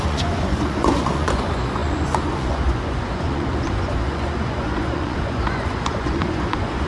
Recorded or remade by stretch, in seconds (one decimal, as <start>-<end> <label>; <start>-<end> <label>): 0.0-6.9 remade